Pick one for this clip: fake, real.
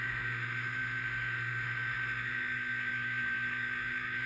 fake